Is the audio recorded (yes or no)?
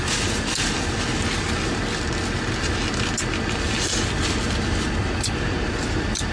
yes